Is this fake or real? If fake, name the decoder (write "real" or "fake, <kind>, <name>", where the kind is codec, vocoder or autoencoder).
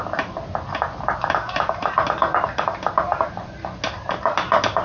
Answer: real